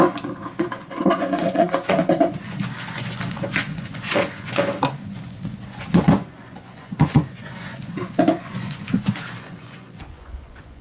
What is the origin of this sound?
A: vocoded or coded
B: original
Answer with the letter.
A